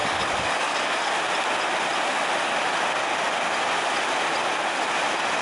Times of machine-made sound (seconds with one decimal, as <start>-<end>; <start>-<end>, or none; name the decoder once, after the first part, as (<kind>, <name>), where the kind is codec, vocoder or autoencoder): 0.0-1.1 (codec, DAC)